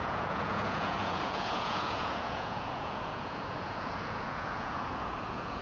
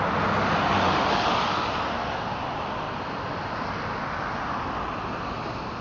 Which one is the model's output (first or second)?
first